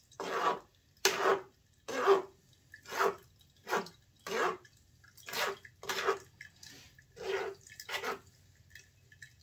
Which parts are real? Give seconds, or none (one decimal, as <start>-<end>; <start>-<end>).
0.0-9.4